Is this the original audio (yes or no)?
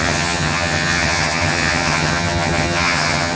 no